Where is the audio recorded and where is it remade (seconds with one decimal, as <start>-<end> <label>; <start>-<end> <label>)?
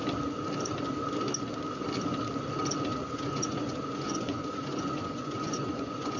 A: 0.0-2.9 recorded; 2.9-6.2 remade